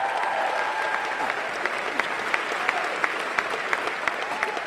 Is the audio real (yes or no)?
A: yes